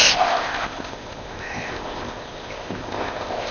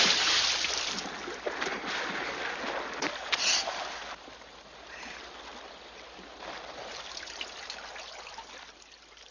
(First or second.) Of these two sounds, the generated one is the first